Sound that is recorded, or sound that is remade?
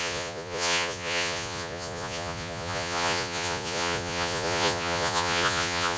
remade